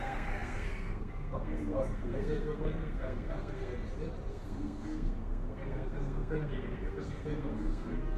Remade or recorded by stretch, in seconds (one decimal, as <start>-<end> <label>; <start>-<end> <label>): 0.0-3.7 remade; 3.7-4.3 recorded; 4.3-8.2 remade

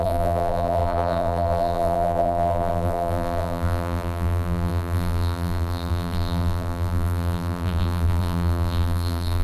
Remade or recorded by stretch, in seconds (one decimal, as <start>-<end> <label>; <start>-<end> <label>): 0.0-9.4 remade

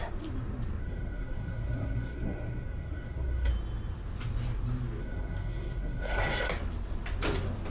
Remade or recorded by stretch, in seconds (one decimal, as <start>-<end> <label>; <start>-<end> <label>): 0.0-0.8 recorded; 0.8-3.5 remade; 3.5-5.0 recorded; 5.0-6.5 remade; 6.5-7.7 recorded